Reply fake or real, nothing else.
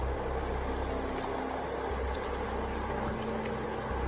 real